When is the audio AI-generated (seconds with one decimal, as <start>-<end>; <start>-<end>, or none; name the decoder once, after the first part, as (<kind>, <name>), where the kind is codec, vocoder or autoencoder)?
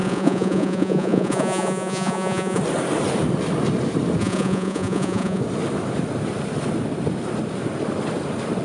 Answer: 0.0-2.6 (vocoder, Vocos); 4.2-5.4